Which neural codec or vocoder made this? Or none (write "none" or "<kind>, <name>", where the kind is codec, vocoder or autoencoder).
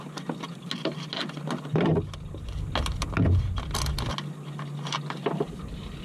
none